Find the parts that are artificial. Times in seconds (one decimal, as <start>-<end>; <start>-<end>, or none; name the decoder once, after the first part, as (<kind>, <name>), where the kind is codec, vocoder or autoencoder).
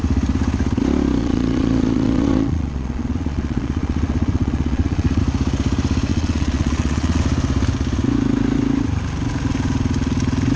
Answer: 1.2-5.2 (vocoder, Vocos); 6.1-7.2